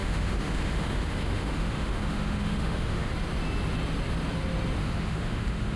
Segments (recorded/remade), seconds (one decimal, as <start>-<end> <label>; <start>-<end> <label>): 0.0-3.1 remade; 3.1-4.8 recorded; 4.8-5.8 remade